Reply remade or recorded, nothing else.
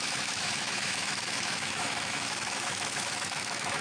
remade